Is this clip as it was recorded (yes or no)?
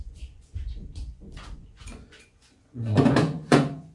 no